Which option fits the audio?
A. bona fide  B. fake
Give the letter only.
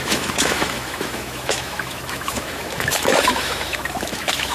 B